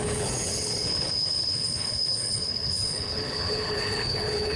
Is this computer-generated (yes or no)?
yes